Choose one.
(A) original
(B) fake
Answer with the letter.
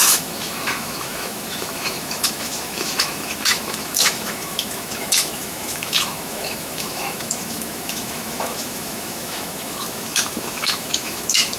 B